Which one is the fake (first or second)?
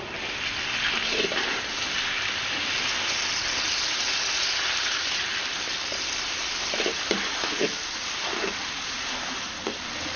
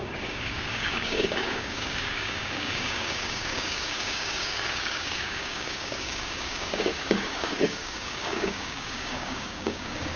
second